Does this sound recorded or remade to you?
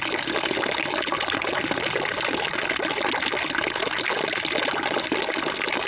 recorded